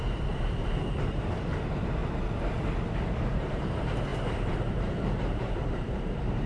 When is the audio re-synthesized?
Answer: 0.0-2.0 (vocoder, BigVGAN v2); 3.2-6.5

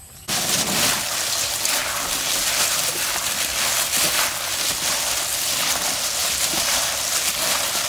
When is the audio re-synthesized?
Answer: 6.2-6.8 (vocoder, BigVGAN v2)

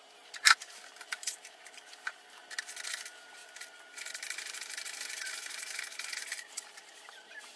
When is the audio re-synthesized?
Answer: 0.0-2.4 (vocoder, BigVGAN v2); 2.9-7.6

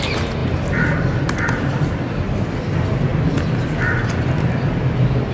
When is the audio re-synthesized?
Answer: none

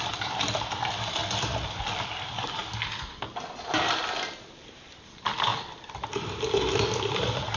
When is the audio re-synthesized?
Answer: 0.0-2.6 (vocoder, BigVGAN v2); 3.1-7.6

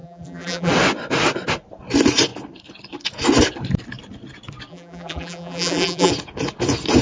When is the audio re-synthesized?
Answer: 0.0-0.7 (vocoder, BigVGAN v2); 4.7-6.1

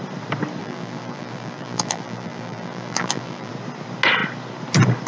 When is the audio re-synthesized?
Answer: 0.6-3.5 (vocoder, BigVGAN v2)